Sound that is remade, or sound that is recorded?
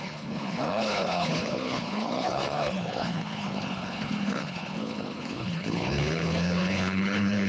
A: remade